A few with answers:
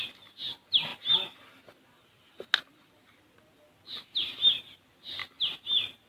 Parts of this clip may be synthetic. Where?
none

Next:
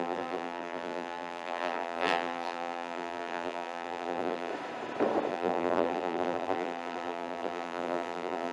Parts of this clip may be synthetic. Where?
0.0-4.5 (vocoder, BigVGAN v2); 5.3-8.5

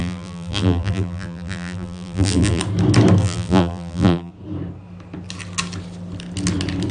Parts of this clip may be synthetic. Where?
0.0-2.6 (vocoder, BigVGAN v2); 3.2-4.3

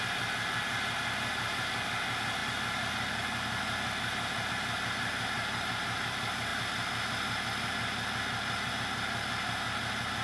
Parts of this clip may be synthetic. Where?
none